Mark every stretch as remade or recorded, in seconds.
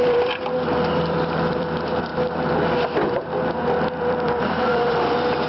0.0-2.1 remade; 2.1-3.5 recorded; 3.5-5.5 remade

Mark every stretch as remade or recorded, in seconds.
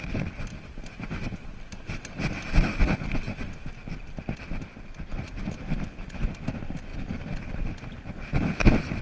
0.0-9.0 recorded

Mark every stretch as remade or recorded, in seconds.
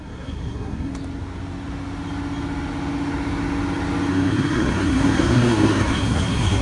0.0-0.9 remade; 0.9-4.1 recorded; 4.1-6.6 remade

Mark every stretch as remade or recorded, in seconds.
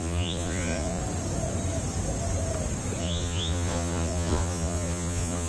0.0-1.0 remade; 1.0-3.0 recorded; 3.0-5.5 remade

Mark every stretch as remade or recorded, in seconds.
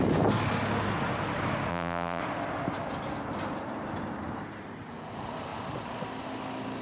0.0-1.7 recorded; 1.7-2.2 remade; 2.2-6.8 recorded